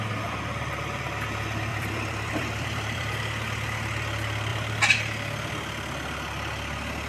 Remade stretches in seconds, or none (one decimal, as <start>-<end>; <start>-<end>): 1.7-3.1; 4.5-5.5